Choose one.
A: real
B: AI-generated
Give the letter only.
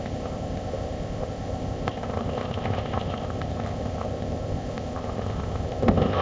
B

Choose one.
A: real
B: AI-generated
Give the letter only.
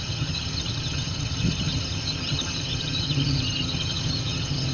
B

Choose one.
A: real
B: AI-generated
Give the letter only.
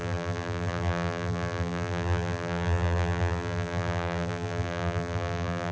B